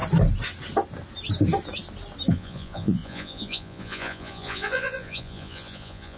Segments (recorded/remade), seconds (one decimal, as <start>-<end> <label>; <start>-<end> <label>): 0.0-2.3 recorded; 2.3-6.2 remade